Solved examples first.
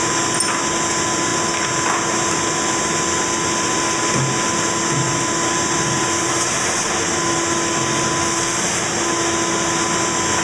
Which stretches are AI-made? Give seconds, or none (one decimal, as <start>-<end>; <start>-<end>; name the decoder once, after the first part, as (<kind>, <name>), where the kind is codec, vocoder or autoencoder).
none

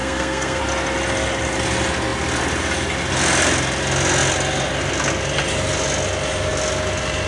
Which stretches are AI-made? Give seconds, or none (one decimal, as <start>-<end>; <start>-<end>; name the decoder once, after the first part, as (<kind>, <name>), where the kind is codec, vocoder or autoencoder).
0.0-0.6 (codec, SNAC)

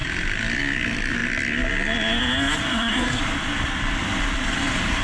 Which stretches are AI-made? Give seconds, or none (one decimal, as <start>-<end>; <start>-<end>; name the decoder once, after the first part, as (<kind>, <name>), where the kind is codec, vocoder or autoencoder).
2.7-3.2 (codec, SNAC)

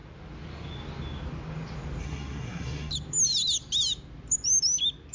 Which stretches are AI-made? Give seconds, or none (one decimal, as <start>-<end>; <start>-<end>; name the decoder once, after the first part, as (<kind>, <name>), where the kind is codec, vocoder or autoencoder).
2.0-2.9 (codec, SNAC)

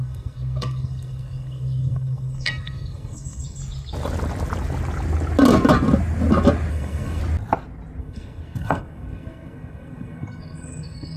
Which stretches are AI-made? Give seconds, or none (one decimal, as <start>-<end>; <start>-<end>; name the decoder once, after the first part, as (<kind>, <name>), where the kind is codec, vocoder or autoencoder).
0.0-3.6 (codec, SNAC); 6.7-7.2; 8.0-11.2